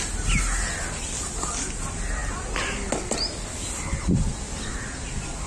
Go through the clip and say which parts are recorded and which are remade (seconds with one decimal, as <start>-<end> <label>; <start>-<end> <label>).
0.0-5.5 recorded